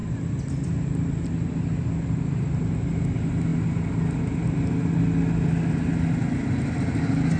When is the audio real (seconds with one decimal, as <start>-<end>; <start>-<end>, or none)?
0.0-7.4